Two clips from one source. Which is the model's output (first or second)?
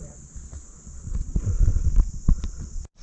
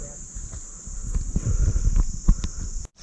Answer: first